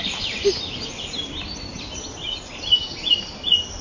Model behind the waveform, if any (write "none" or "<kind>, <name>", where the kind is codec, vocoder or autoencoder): none